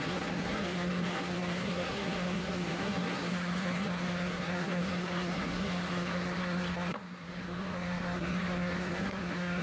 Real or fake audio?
fake